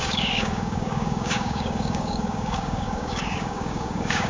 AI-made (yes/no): yes